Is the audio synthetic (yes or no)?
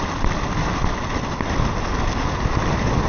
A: no